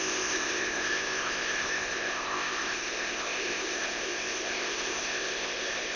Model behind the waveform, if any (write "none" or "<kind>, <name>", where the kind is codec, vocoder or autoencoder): codec, ZipCodec